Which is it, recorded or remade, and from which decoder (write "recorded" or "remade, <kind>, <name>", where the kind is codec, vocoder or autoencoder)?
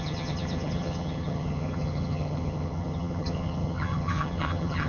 remade, vocoder, HiFi-GAN